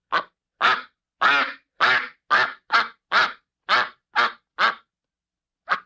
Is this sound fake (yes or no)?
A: no